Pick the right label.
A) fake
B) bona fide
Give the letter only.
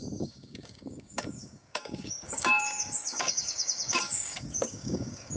A